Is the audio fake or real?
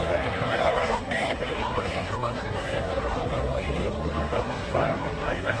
fake